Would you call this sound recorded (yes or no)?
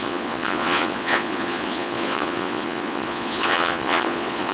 no